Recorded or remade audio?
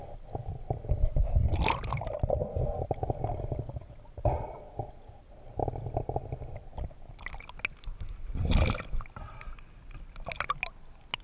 recorded